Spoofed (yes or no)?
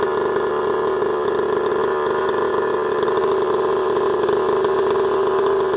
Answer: no